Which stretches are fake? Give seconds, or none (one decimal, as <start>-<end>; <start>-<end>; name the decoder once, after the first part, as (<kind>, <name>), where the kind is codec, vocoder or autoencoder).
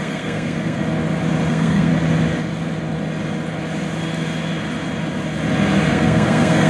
0.0-0.8 (codec, SNAC); 1.5-1.9; 5.9-6.7